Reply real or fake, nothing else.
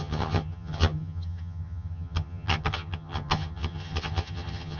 fake